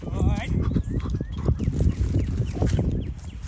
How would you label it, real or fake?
real